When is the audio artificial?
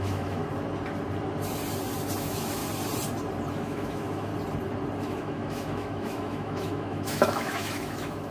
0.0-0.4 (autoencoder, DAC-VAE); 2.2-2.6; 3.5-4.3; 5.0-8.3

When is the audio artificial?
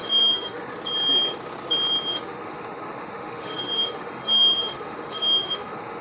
0.0-0.7 (autoencoder, DAC-VAE); 2.1-6.0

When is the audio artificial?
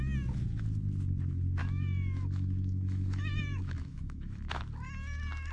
1.6-4.6 (autoencoder, DAC-VAE)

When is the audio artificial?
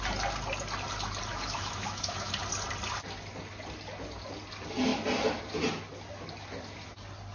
1.3-2.3 (autoencoder, DAC-VAE)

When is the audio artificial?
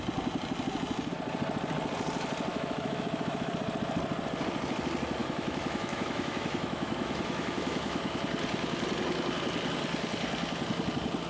2.5-3.5 (autoencoder, DAC-VAE); 5.2-8.2